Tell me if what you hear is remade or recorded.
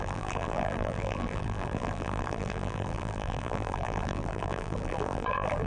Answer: remade